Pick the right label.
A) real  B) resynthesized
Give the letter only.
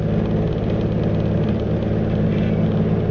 A